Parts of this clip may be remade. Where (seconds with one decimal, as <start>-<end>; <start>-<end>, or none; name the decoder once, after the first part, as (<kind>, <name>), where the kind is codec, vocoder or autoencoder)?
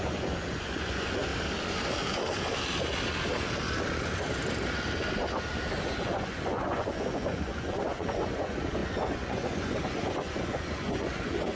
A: 0.0-1.3 (vocoder, Vocos); 5.9-11.6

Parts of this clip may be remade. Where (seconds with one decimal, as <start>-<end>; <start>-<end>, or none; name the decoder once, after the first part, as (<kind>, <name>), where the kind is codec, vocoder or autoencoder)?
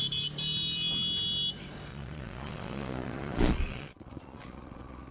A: 1.9-5.1 (vocoder, Vocos)